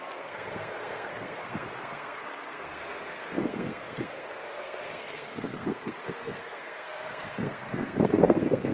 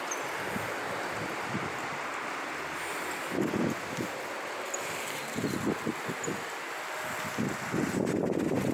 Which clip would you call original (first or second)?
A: second